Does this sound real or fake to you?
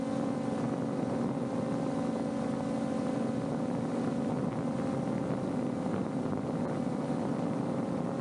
real